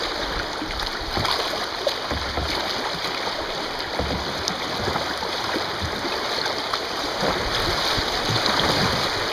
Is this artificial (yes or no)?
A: no